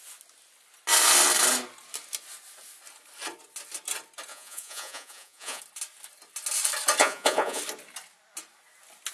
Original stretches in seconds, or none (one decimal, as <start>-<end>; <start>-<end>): 0.0-4.3; 5.6-7.0; 7.6-9.1